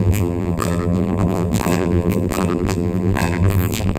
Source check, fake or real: fake